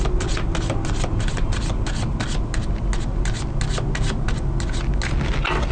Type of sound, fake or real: real